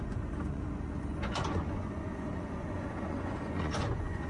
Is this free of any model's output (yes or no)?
no